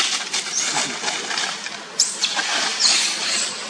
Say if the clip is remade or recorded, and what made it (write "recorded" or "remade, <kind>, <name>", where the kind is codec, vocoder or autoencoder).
recorded